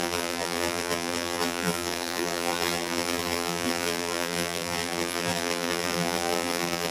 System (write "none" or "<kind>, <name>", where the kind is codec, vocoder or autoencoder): vocoder, BigVGAN v2